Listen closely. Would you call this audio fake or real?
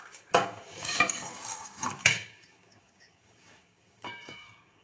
fake